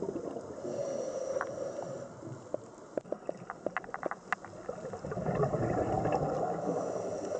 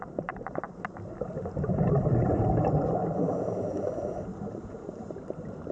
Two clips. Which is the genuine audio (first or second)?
first